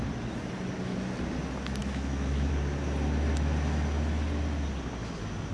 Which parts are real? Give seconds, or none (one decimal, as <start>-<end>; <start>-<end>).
0.0-1.8; 2.5-5.5